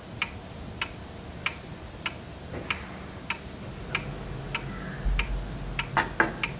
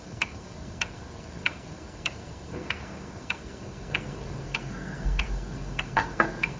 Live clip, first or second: first